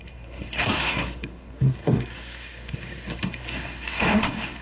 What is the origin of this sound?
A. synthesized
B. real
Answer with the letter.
A